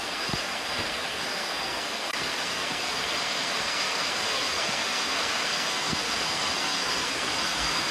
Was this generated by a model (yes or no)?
yes